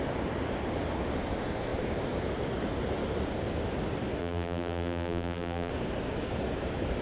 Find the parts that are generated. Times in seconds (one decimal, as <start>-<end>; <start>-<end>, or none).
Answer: 4.2-5.7

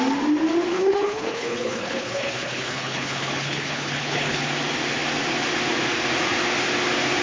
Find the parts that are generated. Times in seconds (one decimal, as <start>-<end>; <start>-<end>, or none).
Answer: 0.7-4.4

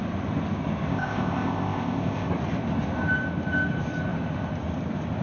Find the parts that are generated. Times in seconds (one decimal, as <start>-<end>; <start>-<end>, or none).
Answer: 0.9-2.3

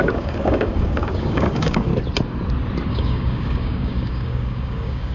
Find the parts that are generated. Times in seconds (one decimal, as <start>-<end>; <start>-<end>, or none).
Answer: 0.0-1.9; 2.9-5.1

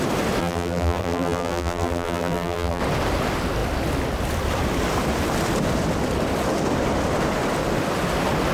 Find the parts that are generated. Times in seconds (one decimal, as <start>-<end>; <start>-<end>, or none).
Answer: 0.4-2.8

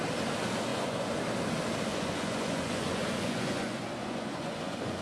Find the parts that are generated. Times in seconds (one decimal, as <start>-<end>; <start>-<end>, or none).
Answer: 0.7-1.2; 1.9-5.0